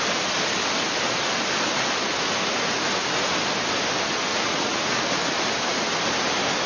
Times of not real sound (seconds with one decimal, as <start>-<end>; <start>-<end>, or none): 4.3-5.0